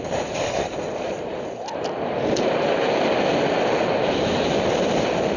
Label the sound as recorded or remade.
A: recorded